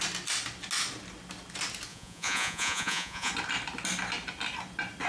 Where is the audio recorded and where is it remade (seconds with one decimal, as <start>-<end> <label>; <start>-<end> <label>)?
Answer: 0.0-1.9 recorded; 1.9-3.3 remade; 3.3-5.1 recorded